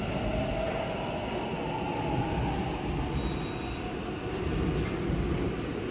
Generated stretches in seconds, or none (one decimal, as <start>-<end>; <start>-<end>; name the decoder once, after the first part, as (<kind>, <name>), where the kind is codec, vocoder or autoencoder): none